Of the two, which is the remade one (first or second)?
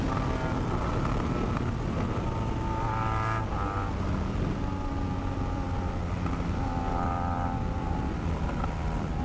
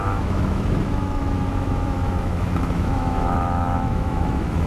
second